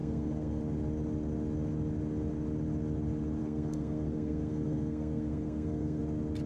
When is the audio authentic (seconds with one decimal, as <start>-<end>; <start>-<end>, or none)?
0.6-3.4; 6.0-6.5